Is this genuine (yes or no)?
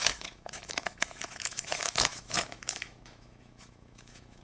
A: no